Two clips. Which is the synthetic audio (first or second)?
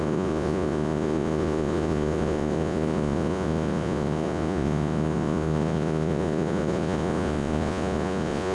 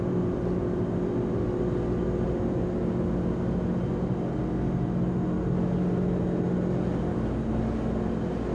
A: first